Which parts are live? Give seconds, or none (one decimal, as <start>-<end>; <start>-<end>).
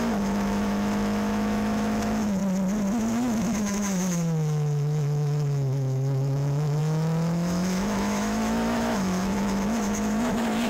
2.4-3.1